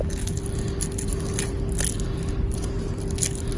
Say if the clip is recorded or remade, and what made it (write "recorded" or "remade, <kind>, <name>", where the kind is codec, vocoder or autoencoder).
recorded